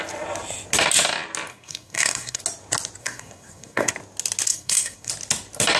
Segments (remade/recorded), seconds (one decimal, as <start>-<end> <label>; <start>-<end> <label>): 0.0-1.5 recorded; 1.5-2.4 remade; 2.4-3.0 recorded; 3.0-3.9 remade; 3.9-4.5 recorded; 4.5-5.1 remade; 5.1-5.8 recorded